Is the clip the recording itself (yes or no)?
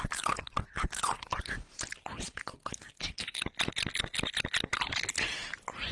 yes